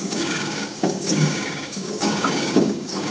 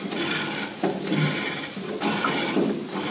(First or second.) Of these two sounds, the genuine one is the second